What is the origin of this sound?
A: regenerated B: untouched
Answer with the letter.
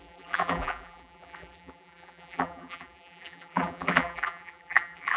A